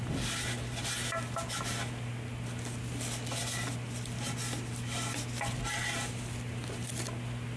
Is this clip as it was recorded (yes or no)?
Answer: yes